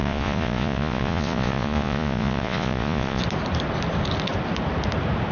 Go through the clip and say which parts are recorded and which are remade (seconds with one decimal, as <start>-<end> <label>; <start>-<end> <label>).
0.0-3.2 remade; 3.2-5.3 recorded